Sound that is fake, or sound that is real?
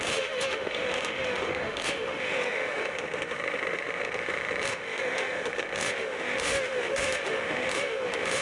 fake